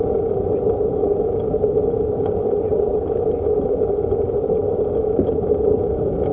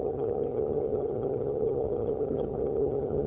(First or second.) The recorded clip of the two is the first